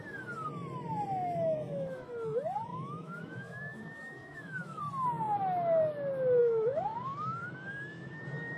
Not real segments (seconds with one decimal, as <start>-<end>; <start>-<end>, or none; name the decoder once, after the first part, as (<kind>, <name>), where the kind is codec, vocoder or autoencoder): 1.2-2.1 (autoencoder, DAC-VAE); 2.7-4.8; 6.4-8.2